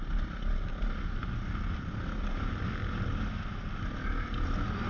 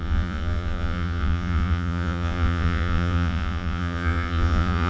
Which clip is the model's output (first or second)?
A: second